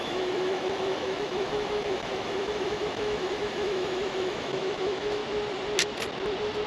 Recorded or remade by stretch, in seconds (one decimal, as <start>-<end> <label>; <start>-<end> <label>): 0.0-5.2 remade; 5.2-6.7 recorded